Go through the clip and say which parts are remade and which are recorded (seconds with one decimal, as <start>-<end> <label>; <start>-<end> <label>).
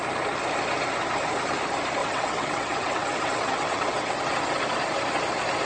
0.0-2.0 recorded; 2.0-4.2 remade; 4.2-5.6 recorded